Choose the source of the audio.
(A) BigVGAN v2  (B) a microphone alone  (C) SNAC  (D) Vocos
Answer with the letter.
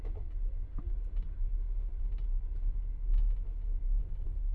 B